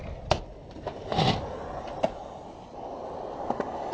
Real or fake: real